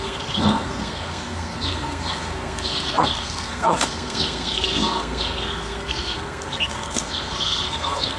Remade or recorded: remade